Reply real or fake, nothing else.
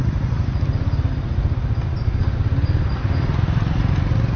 real